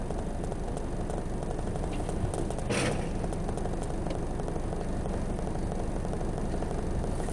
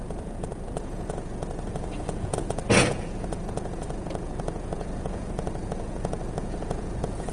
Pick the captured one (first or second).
first